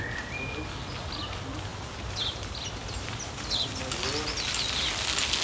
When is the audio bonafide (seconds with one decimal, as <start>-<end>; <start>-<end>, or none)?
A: 0.0-1.7; 3.7-5.4